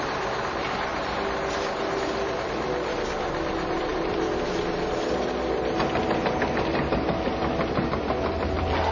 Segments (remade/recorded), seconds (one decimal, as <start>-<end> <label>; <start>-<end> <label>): 0.0-8.9 recorded